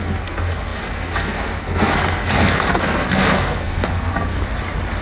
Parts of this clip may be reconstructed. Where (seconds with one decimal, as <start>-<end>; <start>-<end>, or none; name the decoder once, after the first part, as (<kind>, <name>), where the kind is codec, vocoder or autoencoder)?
0.0-4.3 (codec, SNAC)